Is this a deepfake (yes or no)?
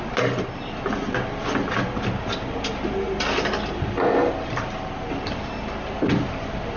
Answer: no